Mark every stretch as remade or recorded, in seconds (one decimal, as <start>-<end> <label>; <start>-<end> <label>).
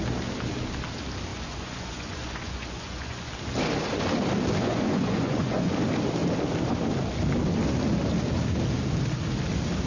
0.0-1.3 recorded; 1.3-3.3 remade; 3.3-4.6 recorded; 4.6-5.7 remade; 5.7-9.9 recorded